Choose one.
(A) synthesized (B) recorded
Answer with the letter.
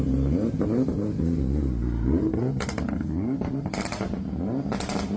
B